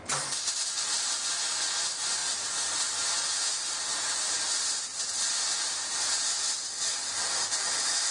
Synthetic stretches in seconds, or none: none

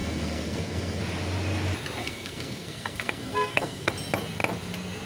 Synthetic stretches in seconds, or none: 0.0-1.0 (codec, SNAC); 2.0-3.9

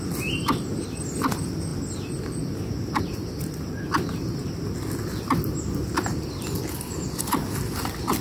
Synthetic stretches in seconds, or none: none

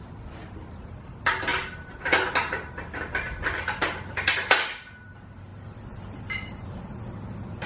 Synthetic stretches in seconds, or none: 5.5-6.2 (vocoder, BigVGAN v2)

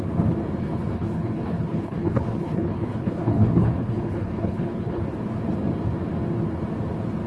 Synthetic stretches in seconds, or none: 0.6-5.0 (codec, HILCodec)

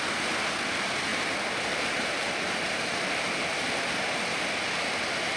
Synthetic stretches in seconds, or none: 1.1-4.1 (vocoder, BigVGAN v2)

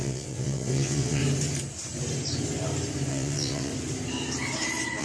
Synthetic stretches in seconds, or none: 0.0-1.2 (vocoder, WaveNeXt); 3.1-3.7